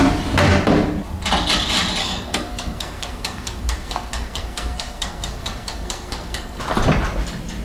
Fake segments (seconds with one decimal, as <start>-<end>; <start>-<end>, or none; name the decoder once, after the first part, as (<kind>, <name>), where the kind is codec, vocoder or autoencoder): 2.0-6.6 (codec, SNAC)